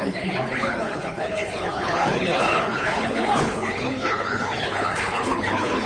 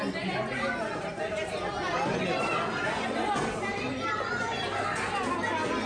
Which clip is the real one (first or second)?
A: second